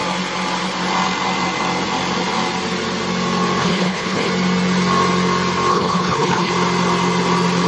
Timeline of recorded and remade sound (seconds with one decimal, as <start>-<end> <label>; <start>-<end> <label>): 0.0-3.6 recorded; 3.6-4.3 remade; 4.3-5.7 recorded; 5.7-6.5 remade; 6.5-7.7 recorded